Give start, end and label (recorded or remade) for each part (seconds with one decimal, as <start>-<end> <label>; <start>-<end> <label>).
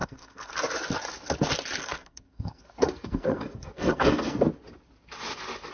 0.0-0.5 remade; 0.5-1.8 recorded; 1.8-4.5 remade; 4.5-5.7 recorded